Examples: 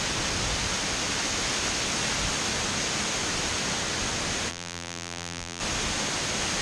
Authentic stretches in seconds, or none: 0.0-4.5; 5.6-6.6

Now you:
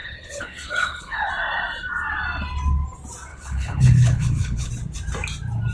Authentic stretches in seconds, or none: 1.3-3.3; 4.7-5.7

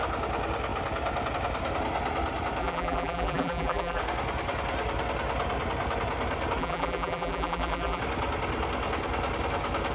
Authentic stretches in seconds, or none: 0.0-2.6; 4.0-6.6; 8.0-9.9

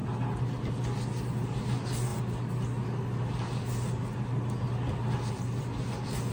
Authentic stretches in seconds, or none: 0.0-6.3

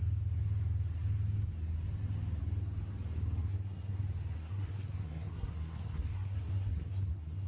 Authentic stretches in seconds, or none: 0.0-3.4; 4.0-4.4

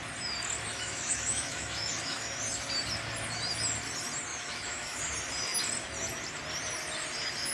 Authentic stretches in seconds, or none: 0.0-0.7; 2.4-4.3; 5.0-7.5